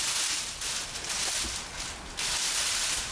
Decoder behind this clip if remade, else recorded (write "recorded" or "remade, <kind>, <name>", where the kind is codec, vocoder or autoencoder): recorded